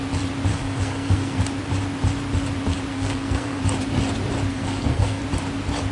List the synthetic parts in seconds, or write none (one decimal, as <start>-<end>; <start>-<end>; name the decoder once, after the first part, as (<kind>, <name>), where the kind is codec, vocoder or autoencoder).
0.5-1.4 (codec, SNAC); 2.9-3.6; 4.5-5.2